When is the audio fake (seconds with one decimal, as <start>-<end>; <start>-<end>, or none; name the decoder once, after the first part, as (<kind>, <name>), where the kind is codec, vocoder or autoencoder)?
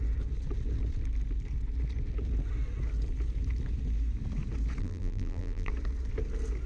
4.8-5.7 (vocoder, BigVGAN v2)